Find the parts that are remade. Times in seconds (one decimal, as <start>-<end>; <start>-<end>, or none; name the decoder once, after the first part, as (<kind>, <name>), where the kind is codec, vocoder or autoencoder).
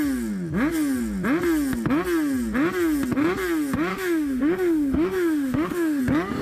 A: 3.9-6.0 (autoencoder, DAC-VAE)